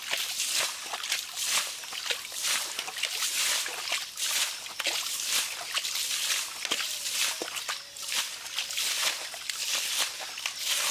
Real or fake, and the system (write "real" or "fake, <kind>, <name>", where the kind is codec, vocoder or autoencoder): real